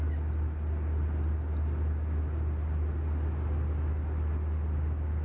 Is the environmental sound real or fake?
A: real